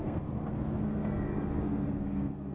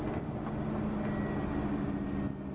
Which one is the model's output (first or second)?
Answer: first